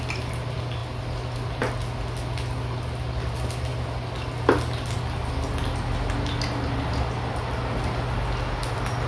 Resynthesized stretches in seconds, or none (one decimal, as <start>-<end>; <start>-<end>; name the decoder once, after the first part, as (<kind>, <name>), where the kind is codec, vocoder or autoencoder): none